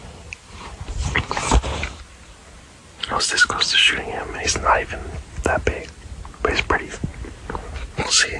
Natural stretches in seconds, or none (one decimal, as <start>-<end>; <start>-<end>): 2.0-8.4